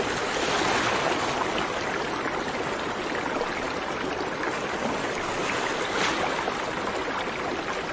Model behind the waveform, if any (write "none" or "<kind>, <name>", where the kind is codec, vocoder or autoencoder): none